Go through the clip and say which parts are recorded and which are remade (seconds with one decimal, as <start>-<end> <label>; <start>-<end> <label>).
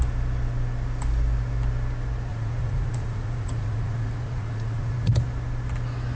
0.0-2.3 recorded; 2.3-5.1 remade; 5.1-6.2 recorded